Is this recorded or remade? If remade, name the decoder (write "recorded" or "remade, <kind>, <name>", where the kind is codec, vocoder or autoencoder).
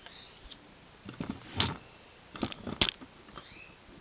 recorded